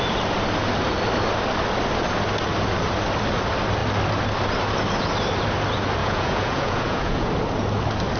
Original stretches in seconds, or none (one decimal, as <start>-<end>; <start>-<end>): 0.0-6.0; 7.3-8.2